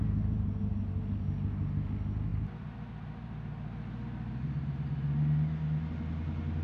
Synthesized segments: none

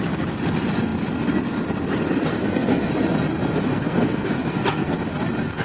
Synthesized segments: 2.3-2.9 (codec, SNAC); 3.7-5.0

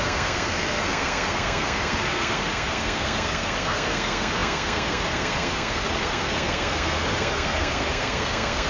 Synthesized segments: 0.0-8.7 (codec, SNAC)